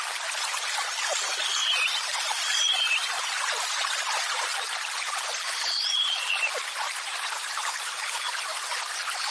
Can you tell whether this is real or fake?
real